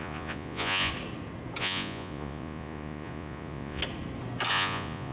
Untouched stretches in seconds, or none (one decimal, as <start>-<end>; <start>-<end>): 0.9-1.6; 3.8-4.5